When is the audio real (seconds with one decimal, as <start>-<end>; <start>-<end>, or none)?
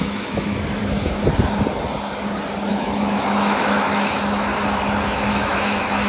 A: 0.8-2.7; 4.5-5.3